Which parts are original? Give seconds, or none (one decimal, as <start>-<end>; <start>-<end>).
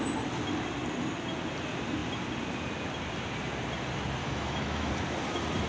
0.0-4.2; 4.9-5.7